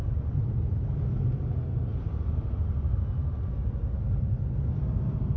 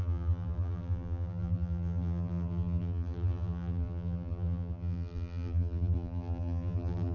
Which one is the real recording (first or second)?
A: first